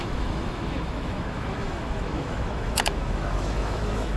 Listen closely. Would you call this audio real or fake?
fake